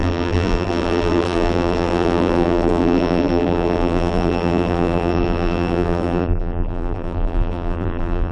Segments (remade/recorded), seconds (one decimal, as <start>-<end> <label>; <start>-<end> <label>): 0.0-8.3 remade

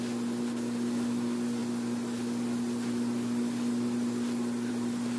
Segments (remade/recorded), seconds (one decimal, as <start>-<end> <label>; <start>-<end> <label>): 0.0-5.2 recorded

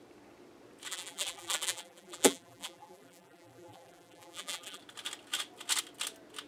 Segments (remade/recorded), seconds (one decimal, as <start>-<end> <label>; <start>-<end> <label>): 0.0-0.9 recorded; 0.9-4.8 remade; 4.8-6.5 recorded

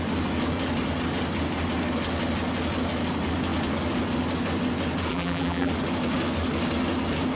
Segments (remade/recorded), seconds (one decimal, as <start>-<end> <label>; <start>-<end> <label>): 0.0-5.1 recorded; 5.1-5.7 remade; 5.7-7.4 recorded

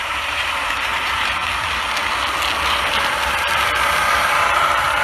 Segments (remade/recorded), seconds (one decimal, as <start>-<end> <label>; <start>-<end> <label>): 0.0-1.4 remade; 1.4-4.1 recorded; 4.1-5.0 remade

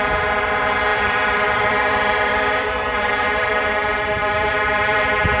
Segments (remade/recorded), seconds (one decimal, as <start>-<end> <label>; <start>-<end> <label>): 0.0-0.9 recorded; 0.9-3.7 remade; 3.7-4.2 recorded; 4.2-5.0 remade; 5.0-5.4 recorded

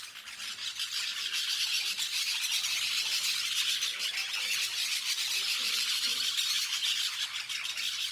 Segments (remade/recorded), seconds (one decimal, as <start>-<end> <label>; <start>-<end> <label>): 0.0-0.6 recorded; 0.6-1.6 remade; 1.6-8.1 recorded

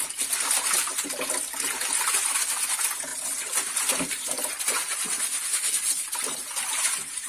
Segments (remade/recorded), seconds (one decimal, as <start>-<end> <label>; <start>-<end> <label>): 0.0-3.1 recorded; 3.1-7.3 remade